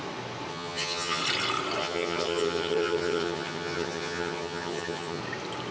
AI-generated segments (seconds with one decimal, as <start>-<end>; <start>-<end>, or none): 0.5-1.2; 1.8-5.2